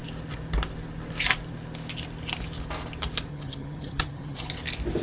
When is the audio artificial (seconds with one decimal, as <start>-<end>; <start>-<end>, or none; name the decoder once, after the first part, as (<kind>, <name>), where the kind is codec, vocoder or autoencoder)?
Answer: 3.3-4.5 (vocoder, HiFi-GAN)